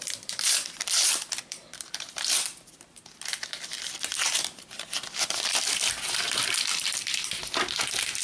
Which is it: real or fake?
fake